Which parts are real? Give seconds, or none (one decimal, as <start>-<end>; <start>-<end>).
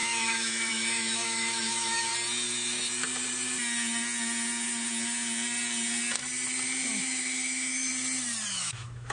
2.1-7.0; 7.9-8.5